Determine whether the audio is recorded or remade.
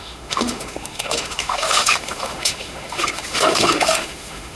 remade